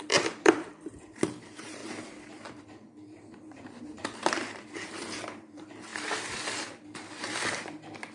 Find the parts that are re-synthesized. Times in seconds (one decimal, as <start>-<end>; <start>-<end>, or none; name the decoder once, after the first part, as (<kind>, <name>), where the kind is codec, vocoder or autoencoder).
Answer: 0.0-1.8 (vocoder, BigVGAN v2); 2.6-5.9; 7.2-8.1